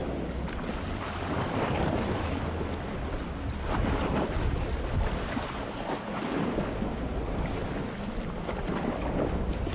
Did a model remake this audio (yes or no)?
yes